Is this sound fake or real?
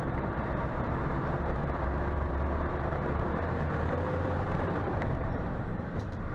fake